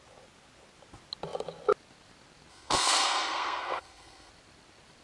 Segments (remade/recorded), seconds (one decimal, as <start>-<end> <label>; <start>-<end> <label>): 0.0-2.5 recorded; 2.5-4.3 remade; 4.3-5.0 recorded